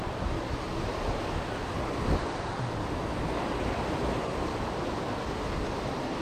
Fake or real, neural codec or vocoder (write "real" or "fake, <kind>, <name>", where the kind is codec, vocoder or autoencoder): real